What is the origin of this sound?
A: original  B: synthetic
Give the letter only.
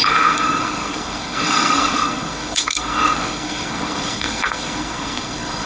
B